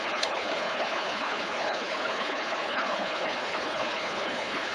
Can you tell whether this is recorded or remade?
remade